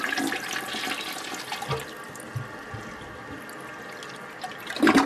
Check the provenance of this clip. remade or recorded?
recorded